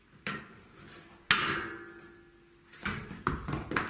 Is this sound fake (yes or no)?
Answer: no